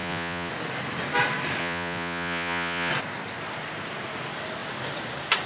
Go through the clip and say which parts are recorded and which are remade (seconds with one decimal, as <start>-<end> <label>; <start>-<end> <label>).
0.0-0.5 remade; 0.5-1.6 recorded; 1.6-2.9 remade; 2.9-5.5 recorded

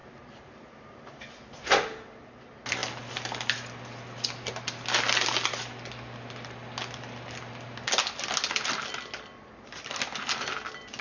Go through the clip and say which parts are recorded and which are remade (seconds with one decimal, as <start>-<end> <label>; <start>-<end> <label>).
0.0-1.1 remade; 1.1-11.0 recorded